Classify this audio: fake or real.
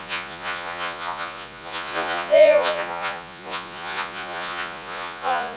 fake